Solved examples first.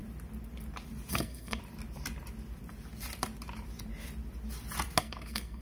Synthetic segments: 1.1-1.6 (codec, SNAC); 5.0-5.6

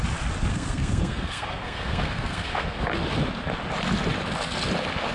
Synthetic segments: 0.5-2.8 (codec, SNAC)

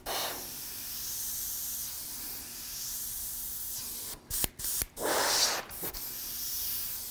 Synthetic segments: none

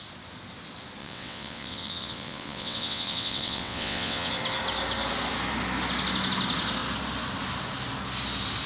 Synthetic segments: 1.0-4.3 (vocoder, WaveNeXt)

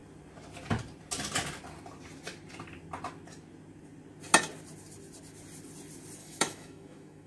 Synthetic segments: 6.2-7.3 (autoencoder, DAC-VAE)

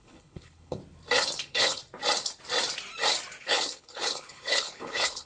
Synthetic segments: 0.0-0.8 (codec, HILCodec); 1.4-1.8; 3.4-5.3